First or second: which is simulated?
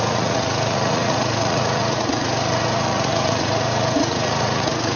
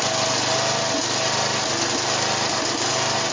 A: first